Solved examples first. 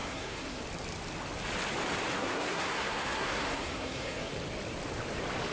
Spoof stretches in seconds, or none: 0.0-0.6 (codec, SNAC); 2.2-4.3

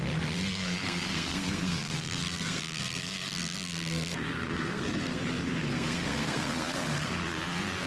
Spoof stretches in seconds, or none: 0.5-5.2 (codec, SNAC); 5.7-7.2

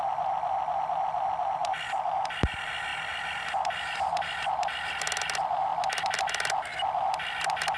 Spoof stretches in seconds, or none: 1.6-2.5 (vocoder, BigVGAN v2); 2.9-5.0; 5.7-6.3